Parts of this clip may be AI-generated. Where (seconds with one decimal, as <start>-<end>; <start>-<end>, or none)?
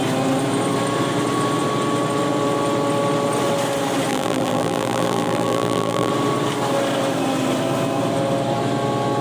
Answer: 4.1-6.1